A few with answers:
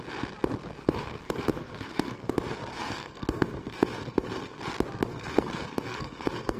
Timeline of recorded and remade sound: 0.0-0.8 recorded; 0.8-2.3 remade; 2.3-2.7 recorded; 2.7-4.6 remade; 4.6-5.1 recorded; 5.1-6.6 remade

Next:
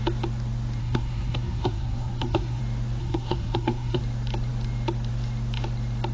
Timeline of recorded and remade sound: 0.0-0.8 recorded; 0.8-2.6 remade; 2.6-3.0 recorded; 3.0-4.0 remade; 4.0-6.1 recorded

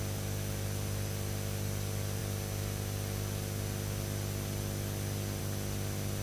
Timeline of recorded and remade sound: 0.0-6.2 recorded